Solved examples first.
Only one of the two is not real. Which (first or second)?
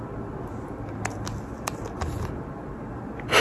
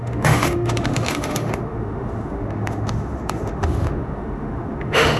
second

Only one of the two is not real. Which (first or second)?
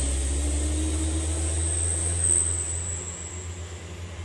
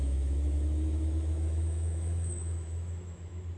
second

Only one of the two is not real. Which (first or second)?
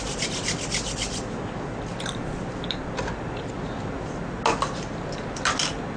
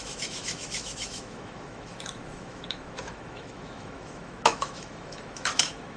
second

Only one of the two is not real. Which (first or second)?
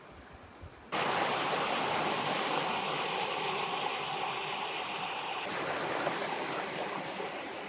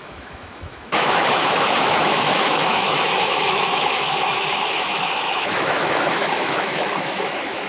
second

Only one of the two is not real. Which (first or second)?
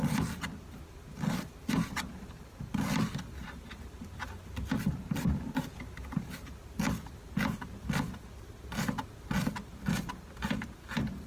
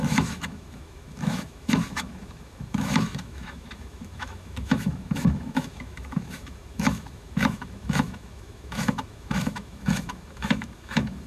second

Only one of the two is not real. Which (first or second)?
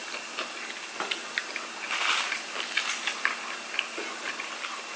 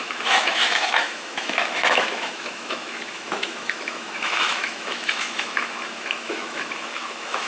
second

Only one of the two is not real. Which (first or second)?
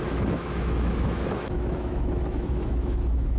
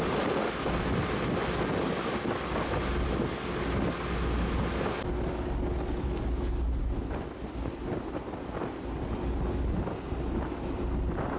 first